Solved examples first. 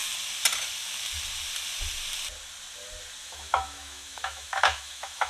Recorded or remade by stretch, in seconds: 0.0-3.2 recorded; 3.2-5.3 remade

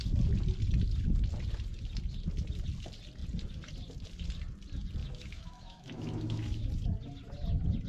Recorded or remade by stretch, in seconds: 0.0-5.0 recorded; 5.0-6.7 remade; 6.7-7.9 recorded

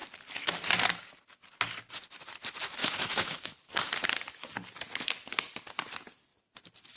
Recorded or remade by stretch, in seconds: 0.0-2.8 recorded; 2.8-3.5 remade; 3.5-7.0 recorded

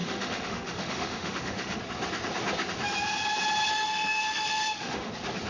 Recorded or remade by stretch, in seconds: 0.0-1.8 remade; 1.8-3.7 recorded; 3.7-5.1 remade; 5.1-5.5 recorded

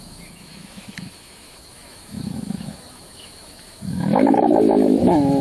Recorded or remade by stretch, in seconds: 0.0-5.4 remade

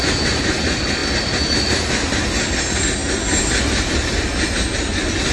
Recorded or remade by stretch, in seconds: 0.0-5.3 recorded

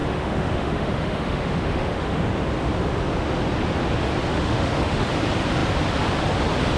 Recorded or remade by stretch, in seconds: 0.0-2.2 remade; 2.2-4.3 recorded; 4.3-5.1 remade; 5.1-6.8 recorded

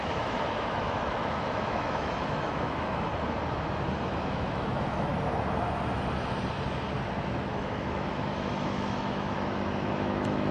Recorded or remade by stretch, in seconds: 0.0-3.1 remade; 3.1-4.2 recorded; 4.2-5.1 remade; 5.1-7.4 recorded; 7.4-10.5 remade